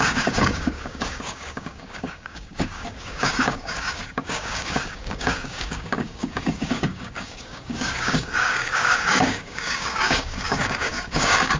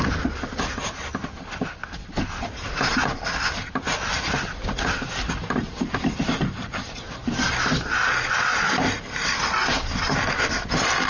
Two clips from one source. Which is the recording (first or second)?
second